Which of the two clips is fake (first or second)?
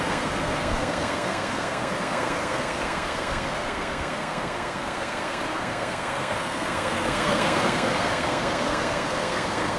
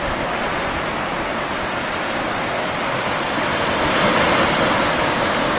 first